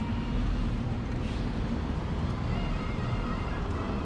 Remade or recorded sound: remade